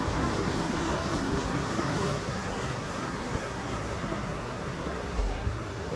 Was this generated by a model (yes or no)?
yes